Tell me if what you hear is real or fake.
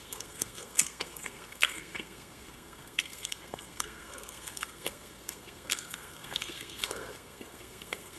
fake